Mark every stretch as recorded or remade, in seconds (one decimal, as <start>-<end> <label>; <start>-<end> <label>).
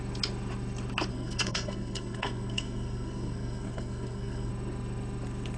0.0-1.1 recorded; 1.1-4.5 remade; 4.5-5.6 recorded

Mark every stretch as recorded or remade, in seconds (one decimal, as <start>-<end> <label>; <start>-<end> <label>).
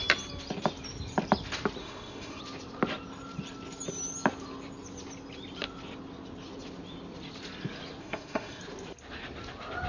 0.0-1.8 recorded; 1.8-2.4 remade; 2.4-8.0 recorded; 8.0-8.6 remade; 8.6-9.9 recorded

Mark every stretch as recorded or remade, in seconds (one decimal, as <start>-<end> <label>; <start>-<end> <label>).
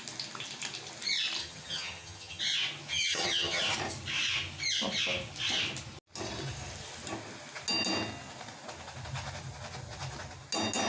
0.0-1.4 recorded; 1.4-2.4 remade; 2.4-2.9 recorded; 2.9-3.6 remade; 3.6-10.9 recorded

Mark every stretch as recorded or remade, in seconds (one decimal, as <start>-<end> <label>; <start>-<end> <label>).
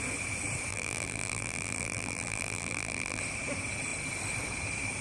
0.0-0.7 recorded; 0.7-3.2 remade; 3.2-5.0 recorded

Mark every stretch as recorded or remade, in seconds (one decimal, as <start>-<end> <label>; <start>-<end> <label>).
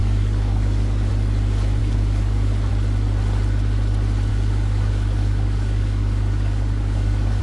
0.0-1.1 remade; 1.1-1.8 recorded; 1.8-2.7 remade; 2.7-4.3 recorded; 4.3-7.4 remade